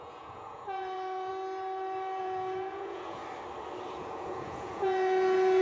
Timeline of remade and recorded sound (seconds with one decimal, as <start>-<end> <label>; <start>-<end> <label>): 0.0-1.3 remade; 1.3-2.2 recorded; 2.2-3.2 remade; 3.2-3.9 recorded; 3.9-5.6 remade